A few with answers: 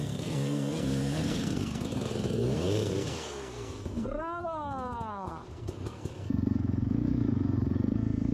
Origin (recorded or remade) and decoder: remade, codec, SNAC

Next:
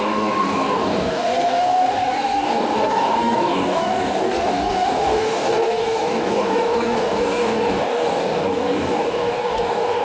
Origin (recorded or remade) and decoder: remade, codec, DAC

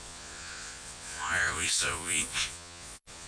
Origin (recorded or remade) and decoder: remade, vocoder, Vocos